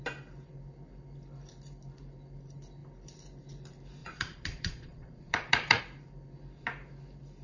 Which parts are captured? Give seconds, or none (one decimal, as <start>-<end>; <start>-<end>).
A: 0.0-4.0; 5.8-7.4